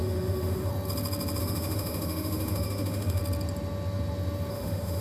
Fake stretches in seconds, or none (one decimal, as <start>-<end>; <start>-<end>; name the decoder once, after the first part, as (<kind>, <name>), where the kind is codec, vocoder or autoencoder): 0.0-0.7 (autoencoder, DAC-VAE); 1.4-3.2; 4.5-5.0